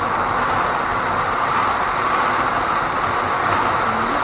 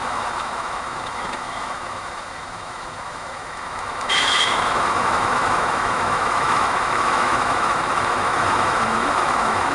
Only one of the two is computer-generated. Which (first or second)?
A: second